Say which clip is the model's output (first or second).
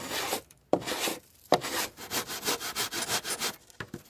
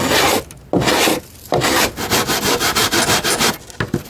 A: first